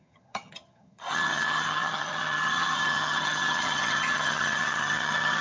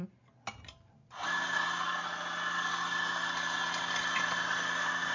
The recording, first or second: second